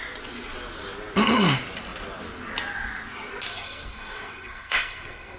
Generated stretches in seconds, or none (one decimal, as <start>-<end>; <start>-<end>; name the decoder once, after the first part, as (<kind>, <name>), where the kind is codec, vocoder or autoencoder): 3.5-5.4 (codec, SNAC)